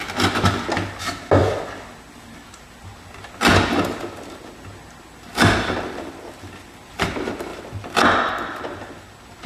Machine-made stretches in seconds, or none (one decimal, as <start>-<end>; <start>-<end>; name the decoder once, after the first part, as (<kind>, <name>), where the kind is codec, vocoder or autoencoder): 5.3-6.9 (vocoder, BigVGAN v2); 7.5-8.3